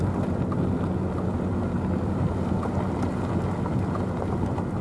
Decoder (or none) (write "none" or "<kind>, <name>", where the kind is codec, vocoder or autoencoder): none